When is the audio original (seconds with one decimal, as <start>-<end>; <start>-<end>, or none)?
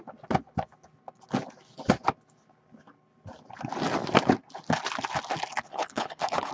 0.0-5.7